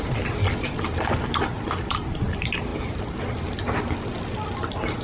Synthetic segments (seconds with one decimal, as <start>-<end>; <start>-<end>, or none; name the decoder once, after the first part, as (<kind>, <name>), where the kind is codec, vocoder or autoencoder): none